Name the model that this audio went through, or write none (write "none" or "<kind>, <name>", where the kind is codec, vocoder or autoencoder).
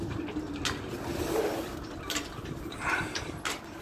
none